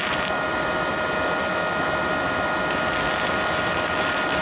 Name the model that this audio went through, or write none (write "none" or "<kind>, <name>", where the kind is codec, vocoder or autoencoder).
none